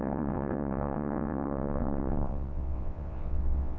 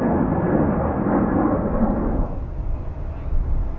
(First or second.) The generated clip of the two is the first